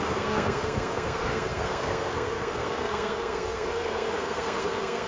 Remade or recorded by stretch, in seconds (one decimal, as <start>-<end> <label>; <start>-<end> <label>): 0.0-5.1 remade